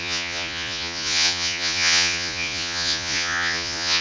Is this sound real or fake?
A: fake